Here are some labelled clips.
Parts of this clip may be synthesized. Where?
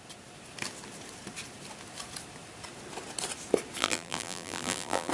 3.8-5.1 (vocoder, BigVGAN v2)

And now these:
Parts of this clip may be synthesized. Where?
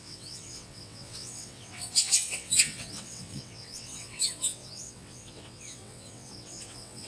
0.0-7.1 (vocoder, WaveNeXt)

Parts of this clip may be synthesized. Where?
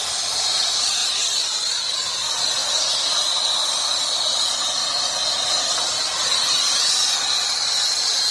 0.0-1.0 (vocoder, BigVGAN v2); 2.2-2.6; 3.3-4.8; 5.9-8.3